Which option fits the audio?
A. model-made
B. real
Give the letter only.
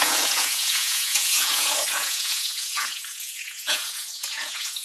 A